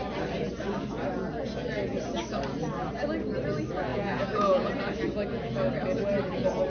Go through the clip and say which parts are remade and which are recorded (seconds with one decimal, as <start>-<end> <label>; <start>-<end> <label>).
0.0-3.9 recorded; 3.9-4.7 remade; 4.7-6.7 recorded